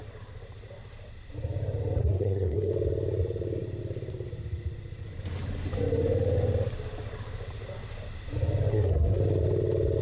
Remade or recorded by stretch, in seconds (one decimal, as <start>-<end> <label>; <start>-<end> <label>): 0.0-2.0 recorded; 2.0-2.7 remade; 2.7-8.7 recorded; 8.7-9.2 remade; 9.2-10.0 recorded